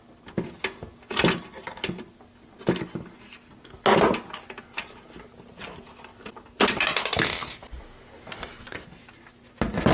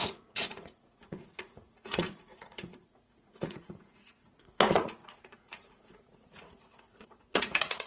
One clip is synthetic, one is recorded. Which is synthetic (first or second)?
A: second